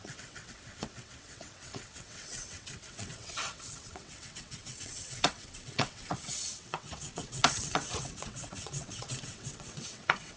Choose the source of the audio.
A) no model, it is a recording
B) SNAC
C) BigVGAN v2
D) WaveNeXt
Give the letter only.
D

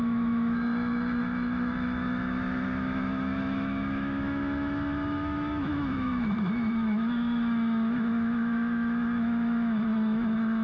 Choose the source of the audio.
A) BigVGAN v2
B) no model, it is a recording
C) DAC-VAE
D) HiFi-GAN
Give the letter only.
C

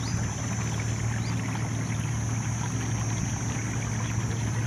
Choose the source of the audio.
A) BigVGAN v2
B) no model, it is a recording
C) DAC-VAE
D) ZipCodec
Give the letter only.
B